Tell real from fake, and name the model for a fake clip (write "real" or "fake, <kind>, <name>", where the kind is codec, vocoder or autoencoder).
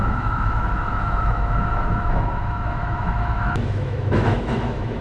fake, autoencoder, DAC-VAE